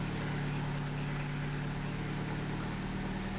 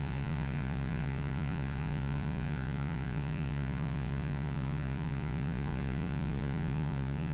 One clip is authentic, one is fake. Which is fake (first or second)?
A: second